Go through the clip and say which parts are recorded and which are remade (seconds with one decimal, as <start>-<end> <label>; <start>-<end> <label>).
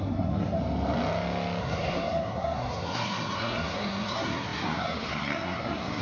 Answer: 0.0-0.6 remade; 0.6-1.6 recorded; 1.6-6.0 remade